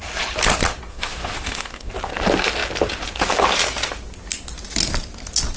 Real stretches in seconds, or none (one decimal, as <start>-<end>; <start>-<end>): 0.0-0.9; 1.9-5.6